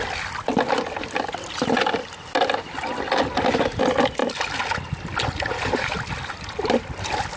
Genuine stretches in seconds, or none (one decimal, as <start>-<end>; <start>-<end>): 0.0-7.4